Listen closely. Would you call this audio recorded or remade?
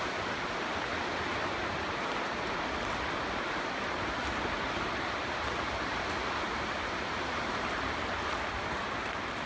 recorded